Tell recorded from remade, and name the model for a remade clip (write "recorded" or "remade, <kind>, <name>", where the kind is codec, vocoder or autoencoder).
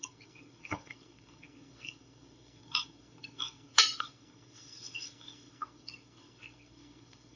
remade, codec, SNAC